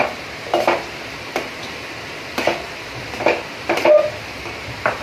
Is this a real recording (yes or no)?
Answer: yes